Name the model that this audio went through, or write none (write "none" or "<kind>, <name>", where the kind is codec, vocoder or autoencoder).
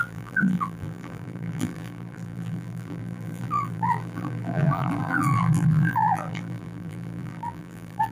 vocoder, BigVGAN v2